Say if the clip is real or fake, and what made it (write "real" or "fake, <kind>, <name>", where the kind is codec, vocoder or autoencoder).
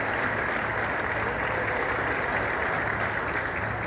real